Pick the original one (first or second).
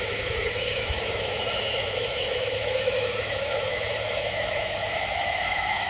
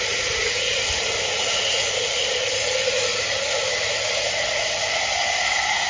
second